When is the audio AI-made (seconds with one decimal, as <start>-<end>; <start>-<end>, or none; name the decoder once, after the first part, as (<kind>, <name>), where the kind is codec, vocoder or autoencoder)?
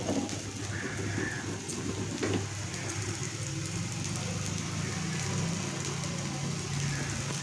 none